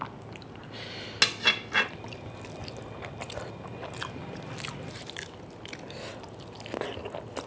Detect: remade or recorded recorded